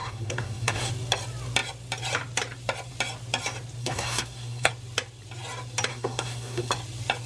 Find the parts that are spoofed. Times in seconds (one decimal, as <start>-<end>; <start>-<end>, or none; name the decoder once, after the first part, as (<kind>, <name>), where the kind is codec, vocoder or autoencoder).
0.0-0.9 (codec, SNAC); 3.8-4.7; 5.9-6.7